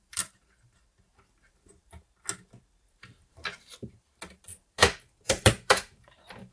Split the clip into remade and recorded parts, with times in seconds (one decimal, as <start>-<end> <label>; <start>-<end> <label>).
0.0-0.9 remade; 0.9-2.9 recorded; 2.9-6.5 remade